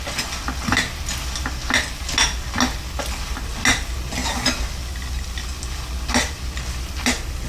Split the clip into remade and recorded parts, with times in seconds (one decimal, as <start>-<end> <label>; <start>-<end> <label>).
0.0-7.5 recorded

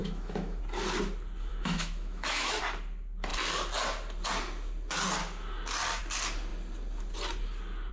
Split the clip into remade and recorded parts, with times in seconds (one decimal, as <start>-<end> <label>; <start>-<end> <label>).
0.0-0.6 remade; 0.6-1.5 recorded; 1.5-2.6 remade; 2.6-7.9 recorded

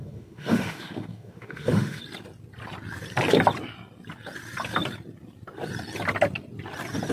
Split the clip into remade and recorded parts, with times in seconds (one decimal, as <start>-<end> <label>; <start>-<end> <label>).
0.0-2.0 remade; 2.0-7.1 recorded

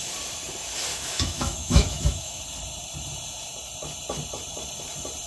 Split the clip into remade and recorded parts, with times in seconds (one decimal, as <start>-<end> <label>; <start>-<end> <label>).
0.0-0.9 recorded; 0.9-2.4 remade; 2.4-5.3 recorded

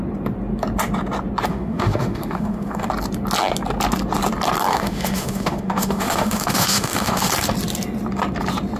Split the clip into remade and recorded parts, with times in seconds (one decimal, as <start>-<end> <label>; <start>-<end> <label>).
0.0-1.5 recorded; 1.5-2.9 remade; 2.9-4.7 recorded; 4.7-7.3 remade; 7.3-8.8 recorded

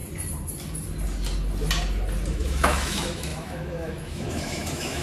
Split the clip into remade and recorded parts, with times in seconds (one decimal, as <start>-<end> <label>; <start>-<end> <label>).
0.0-2.3 recorded; 2.3-5.0 remade

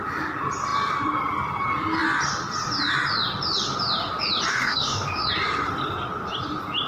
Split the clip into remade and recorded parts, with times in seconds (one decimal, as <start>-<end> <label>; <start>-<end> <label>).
0.0-4.5 recorded; 4.5-5.3 remade; 5.3-6.9 recorded

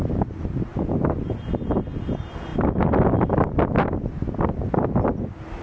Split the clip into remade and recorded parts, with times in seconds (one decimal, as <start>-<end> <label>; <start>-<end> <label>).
0.0-5.6 recorded